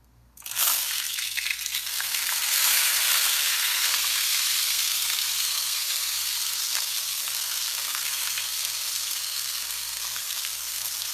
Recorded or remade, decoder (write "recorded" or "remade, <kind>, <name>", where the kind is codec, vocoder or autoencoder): remade, codec, SNAC